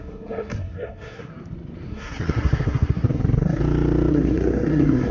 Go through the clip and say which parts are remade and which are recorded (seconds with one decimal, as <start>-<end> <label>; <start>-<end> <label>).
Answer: 0.0-1.3 remade; 1.3-1.9 recorded; 1.9-3.6 remade; 3.6-4.1 recorded; 4.1-5.1 remade